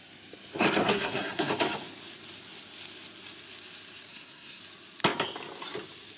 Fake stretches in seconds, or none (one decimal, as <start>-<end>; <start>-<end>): 0.8-1.5; 4.1-4.6